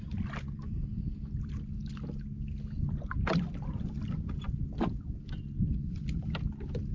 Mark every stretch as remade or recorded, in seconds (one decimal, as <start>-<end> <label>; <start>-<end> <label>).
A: 0.0-6.9 recorded